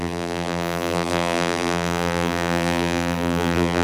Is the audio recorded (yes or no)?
no